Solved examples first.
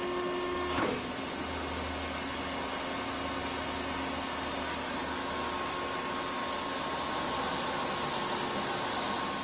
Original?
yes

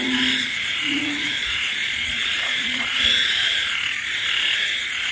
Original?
no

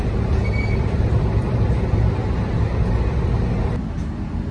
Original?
yes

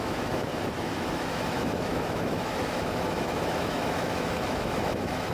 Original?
no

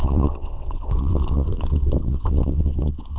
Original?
no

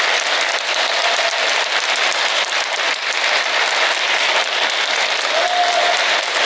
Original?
yes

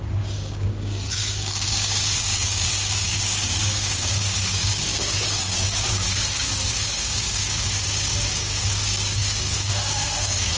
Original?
no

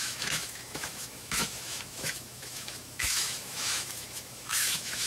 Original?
no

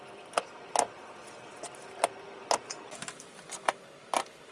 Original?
yes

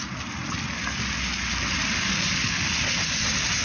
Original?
yes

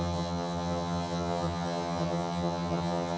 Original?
no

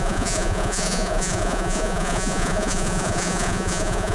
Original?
no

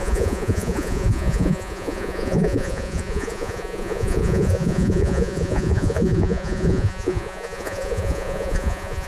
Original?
no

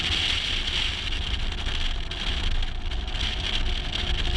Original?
yes